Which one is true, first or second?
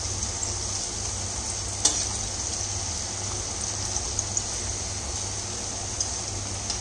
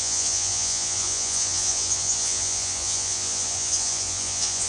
first